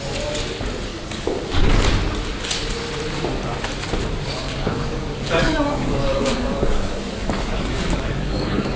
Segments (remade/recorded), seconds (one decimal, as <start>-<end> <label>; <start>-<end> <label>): 0.0-0.9 recorded; 0.9-1.7 remade; 1.7-4.4 recorded; 4.4-8.8 remade